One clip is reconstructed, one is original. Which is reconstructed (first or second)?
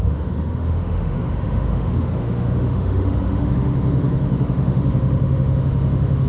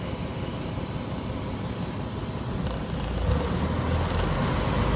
first